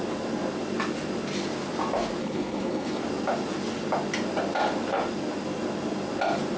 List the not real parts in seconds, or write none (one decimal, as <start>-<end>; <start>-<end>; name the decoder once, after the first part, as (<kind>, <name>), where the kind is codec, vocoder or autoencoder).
2.2-3.0 (codec, HILCodec)